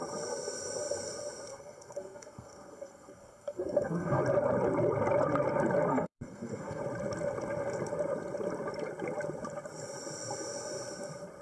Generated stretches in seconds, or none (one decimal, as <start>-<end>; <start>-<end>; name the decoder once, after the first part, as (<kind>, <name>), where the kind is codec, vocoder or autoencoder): 1.5-4.2 (codec, SNAC); 5.9-6.8